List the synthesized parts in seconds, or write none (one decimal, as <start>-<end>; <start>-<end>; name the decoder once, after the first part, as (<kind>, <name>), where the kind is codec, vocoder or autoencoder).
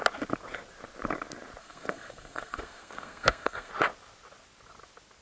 1.6-3.7 (codec, SNAC)